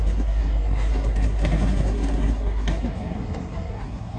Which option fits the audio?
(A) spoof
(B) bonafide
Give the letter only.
A